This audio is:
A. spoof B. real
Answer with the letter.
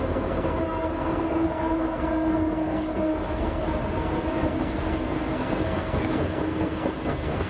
A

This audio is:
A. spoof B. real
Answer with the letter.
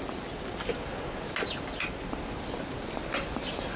B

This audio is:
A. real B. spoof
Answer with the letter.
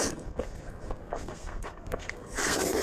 B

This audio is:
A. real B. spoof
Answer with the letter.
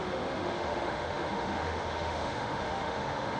B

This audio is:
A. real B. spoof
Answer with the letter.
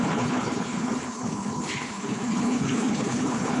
B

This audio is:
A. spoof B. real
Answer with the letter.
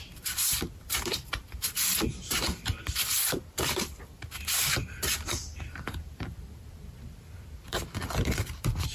A